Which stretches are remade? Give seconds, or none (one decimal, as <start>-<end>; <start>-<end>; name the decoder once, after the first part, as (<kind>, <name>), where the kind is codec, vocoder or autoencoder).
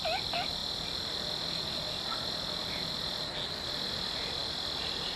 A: none